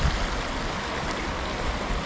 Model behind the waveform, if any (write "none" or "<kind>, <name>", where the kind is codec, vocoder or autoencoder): none